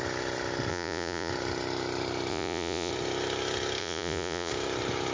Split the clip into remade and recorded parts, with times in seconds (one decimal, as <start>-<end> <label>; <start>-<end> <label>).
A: 0.0-0.7 recorded; 0.7-1.3 remade; 1.3-2.3 recorded; 2.3-2.9 remade; 2.9-3.8 recorded; 3.8-4.5 remade; 4.5-5.1 recorded

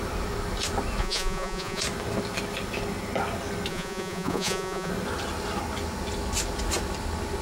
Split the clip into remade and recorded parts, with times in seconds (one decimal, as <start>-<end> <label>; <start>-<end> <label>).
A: 0.0-1.0 recorded; 1.0-1.8 remade; 1.8-3.7 recorded; 3.7-4.9 remade; 4.9-7.4 recorded